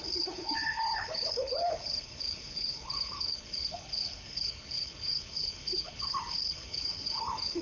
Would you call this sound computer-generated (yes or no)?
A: yes